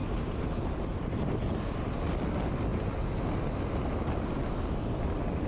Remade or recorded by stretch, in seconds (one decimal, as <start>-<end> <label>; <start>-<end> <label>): 0.0-1.1 remade; 1.1-5.5 recorded